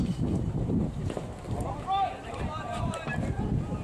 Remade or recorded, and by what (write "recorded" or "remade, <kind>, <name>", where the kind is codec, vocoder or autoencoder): remade, vocoder, BigVGAN v2